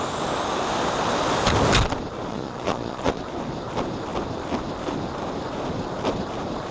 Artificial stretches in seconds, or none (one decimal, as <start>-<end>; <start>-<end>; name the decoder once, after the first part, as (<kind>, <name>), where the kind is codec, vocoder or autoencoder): 2.3-3.2 (vocoder, Vocos)